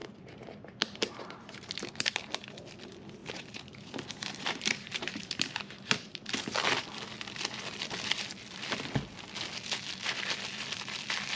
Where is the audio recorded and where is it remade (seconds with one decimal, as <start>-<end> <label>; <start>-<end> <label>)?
0.0-1.9 remade; 1.9-3.2 recorded; 3.2-6.9 remade; 6.9-11.4 recorded